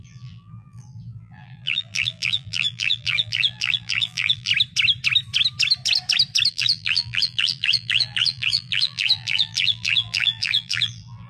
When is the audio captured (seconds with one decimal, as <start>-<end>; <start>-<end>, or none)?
4.5-6.5